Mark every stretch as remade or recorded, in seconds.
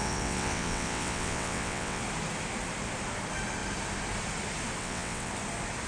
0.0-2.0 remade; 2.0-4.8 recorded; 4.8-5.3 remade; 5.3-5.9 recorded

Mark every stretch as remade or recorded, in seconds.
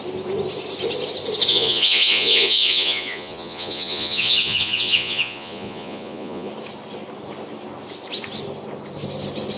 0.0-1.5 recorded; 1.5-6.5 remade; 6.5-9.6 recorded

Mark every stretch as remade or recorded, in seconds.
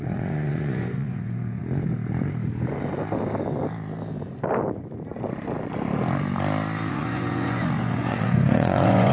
0.0-1.6 remade; 1.6-6.9 recorded; 6.9-9.1 remade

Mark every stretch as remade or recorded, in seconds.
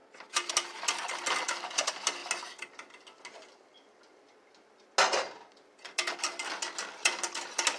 0.0-7.8 recorded